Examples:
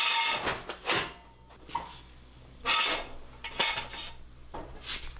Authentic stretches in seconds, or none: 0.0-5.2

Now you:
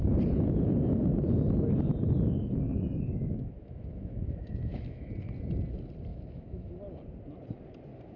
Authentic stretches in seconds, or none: 0.0-2.7; 5.1-6.1; 6.7-8.2

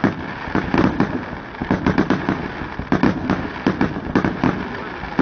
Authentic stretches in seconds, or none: 0.0-5.2

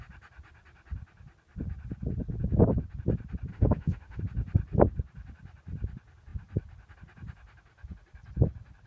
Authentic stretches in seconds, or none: 0.0-3.5; 4.2-8.9

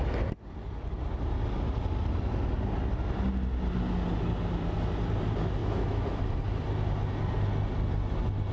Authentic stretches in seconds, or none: 0.0-5.6; 6.2-8.5